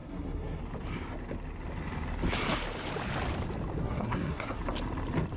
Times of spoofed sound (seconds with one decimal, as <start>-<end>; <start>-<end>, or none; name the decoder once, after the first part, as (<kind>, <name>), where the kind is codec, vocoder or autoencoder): 0.0-0.6 (codec, SNAC); 3.8-4.6